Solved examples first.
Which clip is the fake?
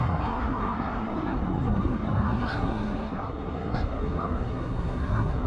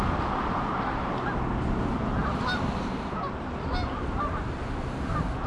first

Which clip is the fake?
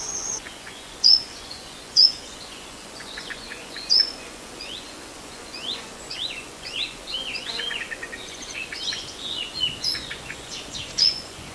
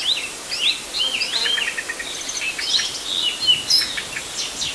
first